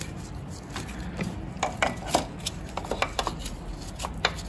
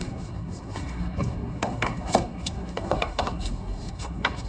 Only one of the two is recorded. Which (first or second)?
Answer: first